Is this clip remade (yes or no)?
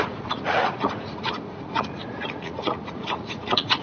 yes